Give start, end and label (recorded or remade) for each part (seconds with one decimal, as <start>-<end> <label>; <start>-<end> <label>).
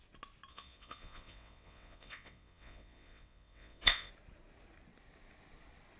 0.0-0.5 recorded; 0.5-4.1 remade; 4.1-6.0 recorded